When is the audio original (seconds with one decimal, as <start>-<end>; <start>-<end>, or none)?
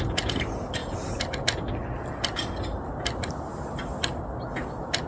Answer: 0.0-5.1